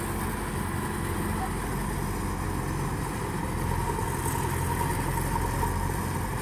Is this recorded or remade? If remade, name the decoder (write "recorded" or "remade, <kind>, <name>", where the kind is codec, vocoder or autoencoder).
recorded